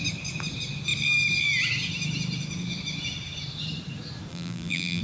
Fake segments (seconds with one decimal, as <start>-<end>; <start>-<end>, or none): 4.3-5.0